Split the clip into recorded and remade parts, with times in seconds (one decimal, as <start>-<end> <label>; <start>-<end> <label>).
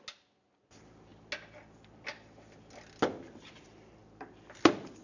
0.0-5.0 recorded